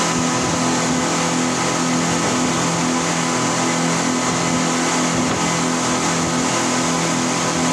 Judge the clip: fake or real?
real